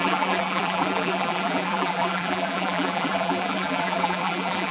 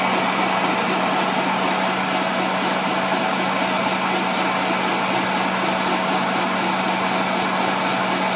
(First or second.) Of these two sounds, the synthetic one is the first